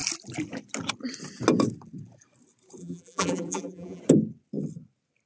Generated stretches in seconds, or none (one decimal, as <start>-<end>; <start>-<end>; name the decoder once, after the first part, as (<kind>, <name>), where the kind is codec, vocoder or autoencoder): 2.8-4.0 (vocoder, BigVGAN v2)